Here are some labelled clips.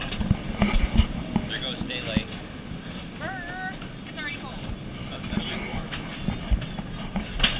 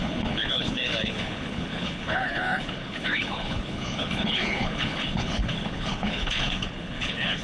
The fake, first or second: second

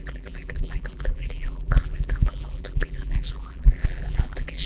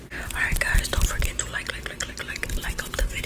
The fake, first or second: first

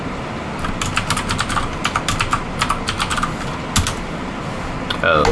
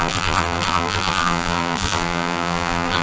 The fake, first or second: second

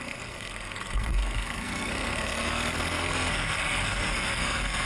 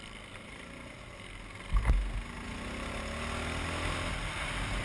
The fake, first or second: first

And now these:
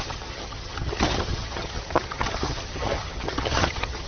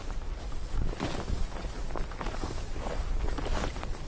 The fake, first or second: first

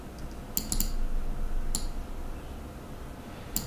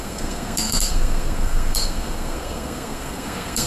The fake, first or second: second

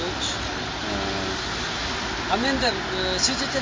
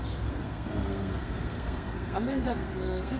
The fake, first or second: second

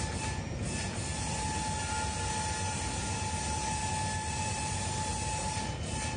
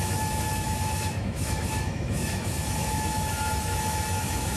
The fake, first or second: second